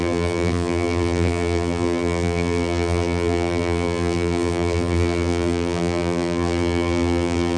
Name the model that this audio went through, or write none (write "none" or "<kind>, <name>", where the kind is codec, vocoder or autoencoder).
vocoder, BigVGAN v2